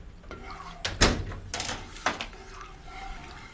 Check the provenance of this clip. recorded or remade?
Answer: recorded